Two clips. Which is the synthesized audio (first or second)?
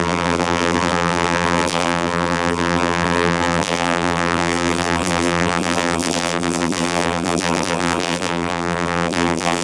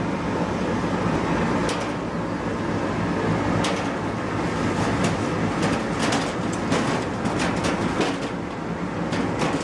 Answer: first